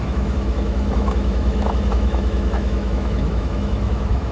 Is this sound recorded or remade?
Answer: remade